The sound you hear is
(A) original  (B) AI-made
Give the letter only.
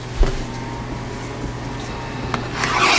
A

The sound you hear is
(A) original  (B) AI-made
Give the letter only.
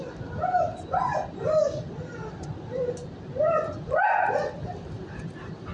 A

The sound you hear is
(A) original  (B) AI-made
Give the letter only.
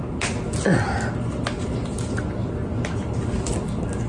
A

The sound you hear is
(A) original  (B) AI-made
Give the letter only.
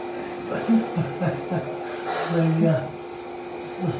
A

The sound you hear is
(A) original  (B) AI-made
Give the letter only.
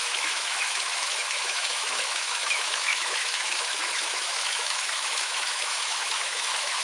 B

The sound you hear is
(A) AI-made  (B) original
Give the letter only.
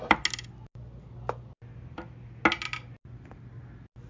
B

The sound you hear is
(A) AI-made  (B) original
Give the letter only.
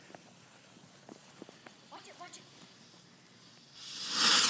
B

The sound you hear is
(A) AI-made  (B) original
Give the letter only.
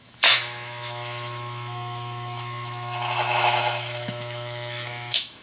A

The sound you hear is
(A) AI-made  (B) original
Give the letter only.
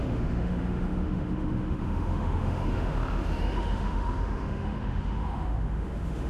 A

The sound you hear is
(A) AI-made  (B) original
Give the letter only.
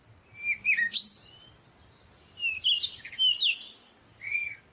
B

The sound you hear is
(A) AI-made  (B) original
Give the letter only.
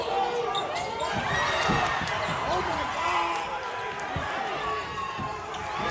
B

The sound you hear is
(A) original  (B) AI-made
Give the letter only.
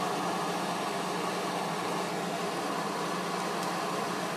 A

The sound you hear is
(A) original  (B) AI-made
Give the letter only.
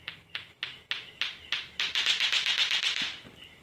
A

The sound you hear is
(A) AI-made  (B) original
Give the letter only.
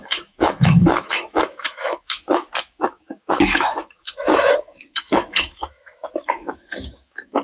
A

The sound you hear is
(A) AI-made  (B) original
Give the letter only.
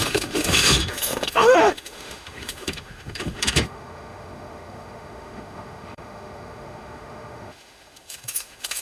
A